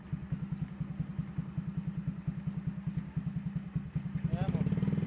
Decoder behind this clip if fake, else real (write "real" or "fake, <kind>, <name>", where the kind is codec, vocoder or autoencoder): real